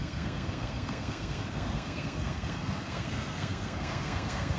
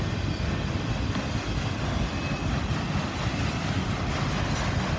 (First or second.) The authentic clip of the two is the second